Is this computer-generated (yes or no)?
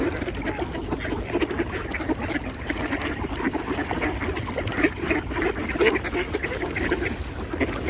no